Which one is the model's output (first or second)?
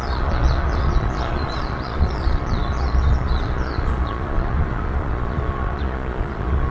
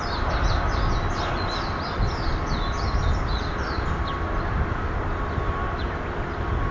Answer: first